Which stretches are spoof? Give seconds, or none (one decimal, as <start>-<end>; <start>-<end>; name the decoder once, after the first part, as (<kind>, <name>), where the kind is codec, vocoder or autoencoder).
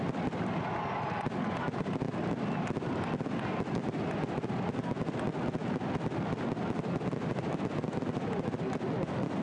none